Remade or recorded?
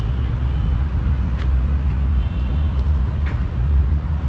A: remade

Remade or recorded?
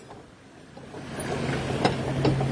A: recorded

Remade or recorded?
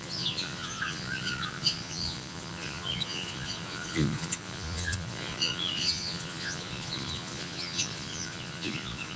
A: remade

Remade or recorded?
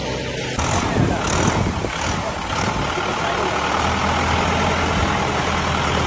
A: recorded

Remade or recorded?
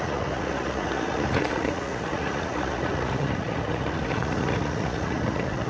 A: remade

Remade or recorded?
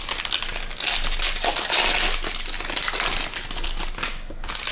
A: recorded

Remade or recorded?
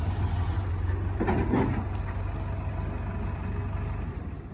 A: recorded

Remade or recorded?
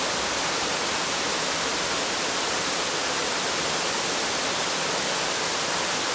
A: recorded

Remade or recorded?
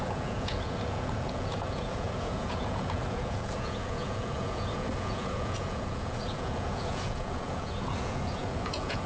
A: remade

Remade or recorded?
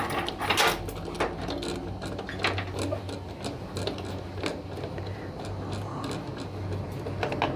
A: recorded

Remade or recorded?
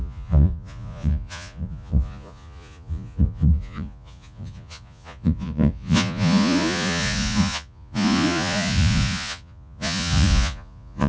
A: remade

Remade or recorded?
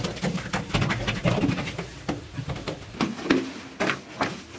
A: recorded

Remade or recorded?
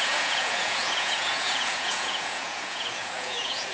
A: remade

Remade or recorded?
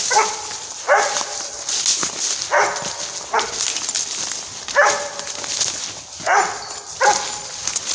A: recorded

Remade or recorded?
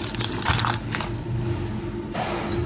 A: recorded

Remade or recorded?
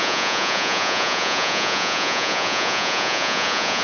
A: remade